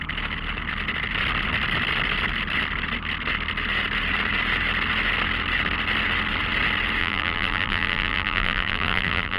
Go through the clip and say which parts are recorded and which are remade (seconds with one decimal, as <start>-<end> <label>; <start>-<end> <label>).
0.0-7.0 recorded; 7.0-9.4 remade